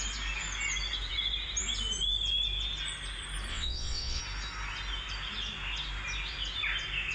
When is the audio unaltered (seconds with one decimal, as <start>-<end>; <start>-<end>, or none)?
0.0-3.5; 4.2-7.1